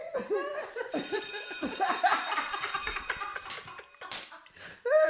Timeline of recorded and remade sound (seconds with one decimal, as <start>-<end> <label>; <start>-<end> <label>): 0.0-2.0 remade; 2.0-3.3 recorded; 3.3-4.3 remade; 4.3-5.1 recorded